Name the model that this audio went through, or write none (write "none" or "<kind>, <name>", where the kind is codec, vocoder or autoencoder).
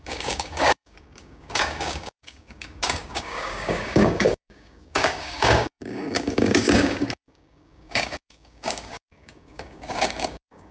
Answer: codec, DAC